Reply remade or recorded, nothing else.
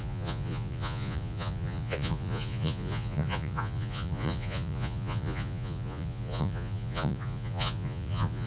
remade